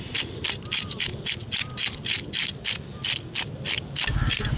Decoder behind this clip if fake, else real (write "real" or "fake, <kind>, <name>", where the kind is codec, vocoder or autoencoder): real